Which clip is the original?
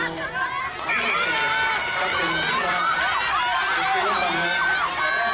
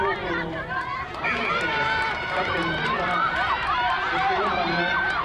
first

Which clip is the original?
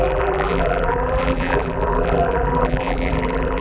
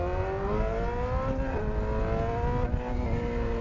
second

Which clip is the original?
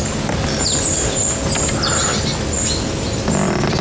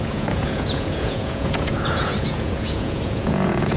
first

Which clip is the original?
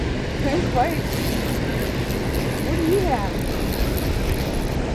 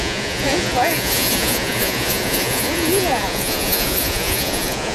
first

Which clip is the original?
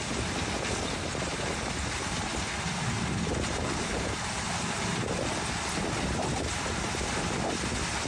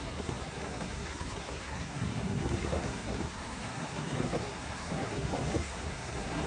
first